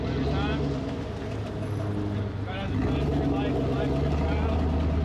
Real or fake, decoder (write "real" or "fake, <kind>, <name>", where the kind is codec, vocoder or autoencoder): real